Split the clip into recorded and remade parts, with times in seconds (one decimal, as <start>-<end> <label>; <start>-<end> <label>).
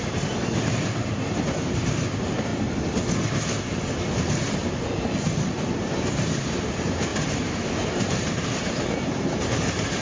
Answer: 0.0-2.5 remade; 2.5-5.5 recorded; 5.5-10.0 remade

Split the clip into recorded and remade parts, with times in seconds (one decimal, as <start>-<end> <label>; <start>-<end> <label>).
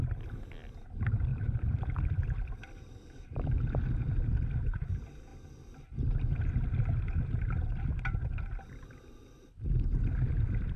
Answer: 0.0-1.3 recorded; 1.3-1.8 remade; 1.8-10.8 recorded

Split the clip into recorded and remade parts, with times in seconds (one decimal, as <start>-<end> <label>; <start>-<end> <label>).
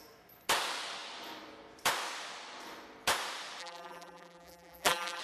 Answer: 0.0-3.6 recorded; 3.6-5.2 remade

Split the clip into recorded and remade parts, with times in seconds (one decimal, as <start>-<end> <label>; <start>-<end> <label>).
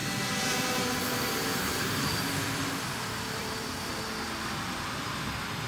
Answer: 0.0-2.2 remade; 2.2-3.4 recorded; 3.4-3.9 remade; 3.9-5.7 recorded